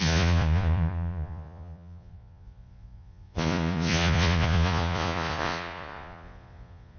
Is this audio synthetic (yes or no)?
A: yes